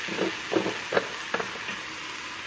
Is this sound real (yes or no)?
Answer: yes